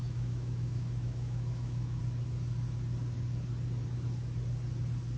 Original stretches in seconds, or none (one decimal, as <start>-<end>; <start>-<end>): 2.0-5.2